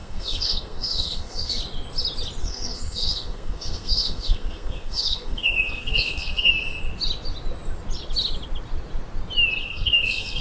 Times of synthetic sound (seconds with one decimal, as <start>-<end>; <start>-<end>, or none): 0.0-1.6; 2.4-6.5; 9.6-10.4